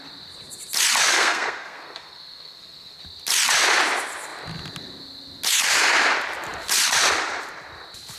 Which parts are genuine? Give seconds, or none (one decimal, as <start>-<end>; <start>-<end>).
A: 0.0-1.1; 3.0-8.2